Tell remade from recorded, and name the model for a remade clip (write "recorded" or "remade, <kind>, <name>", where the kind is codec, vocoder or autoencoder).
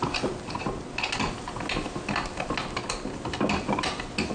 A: recorded